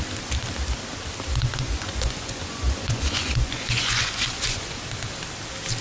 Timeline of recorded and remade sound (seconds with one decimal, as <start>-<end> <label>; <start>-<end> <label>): 0.0-1.3 recorded; 1.3-4.8 remade; 4.8-5.8 recorded